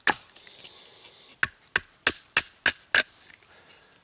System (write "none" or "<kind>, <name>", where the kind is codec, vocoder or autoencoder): none